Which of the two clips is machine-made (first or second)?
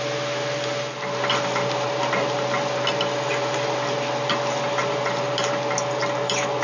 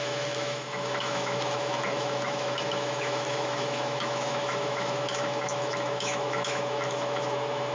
second